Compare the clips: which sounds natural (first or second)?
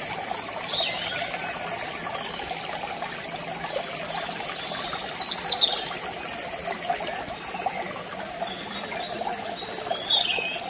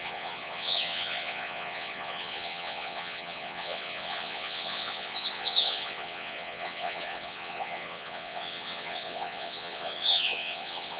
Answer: first